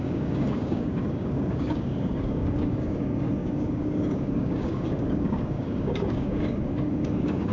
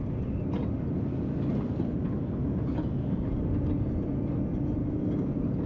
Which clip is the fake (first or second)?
first